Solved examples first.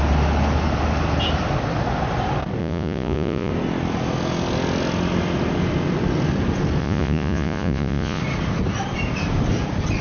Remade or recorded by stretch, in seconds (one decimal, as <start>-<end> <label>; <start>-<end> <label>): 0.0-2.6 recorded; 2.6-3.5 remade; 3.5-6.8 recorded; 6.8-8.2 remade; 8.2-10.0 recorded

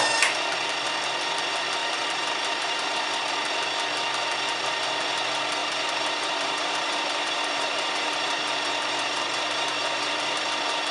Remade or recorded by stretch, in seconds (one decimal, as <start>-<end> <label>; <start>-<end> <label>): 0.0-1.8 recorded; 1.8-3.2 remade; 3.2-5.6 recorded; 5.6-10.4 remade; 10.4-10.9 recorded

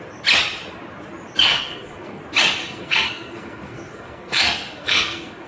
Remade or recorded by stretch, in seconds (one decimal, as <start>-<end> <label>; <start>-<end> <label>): 0.0-1.4 recorded; 1.4-2.2 remade; 2.2-2.6 recorded; 2.6-5.5 remade

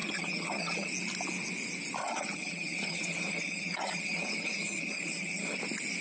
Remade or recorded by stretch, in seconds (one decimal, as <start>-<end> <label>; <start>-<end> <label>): 0.0-0.9 remade; 0.9-2.0 recorded; 2.0-5.6 remade; 5.6-6.0 recorded

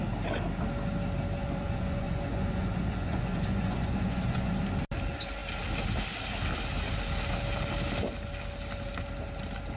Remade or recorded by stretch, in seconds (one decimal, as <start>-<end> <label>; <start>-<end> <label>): 0.0-1.4 recorded; 1.4-4.5 remade; 4.5-9.8 recorded

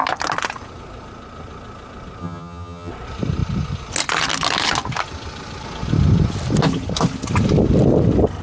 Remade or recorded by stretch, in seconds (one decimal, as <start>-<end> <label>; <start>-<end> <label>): 0.0-2.2 recorded; 2.2-2.9 remade; 2.9-8.4 recorded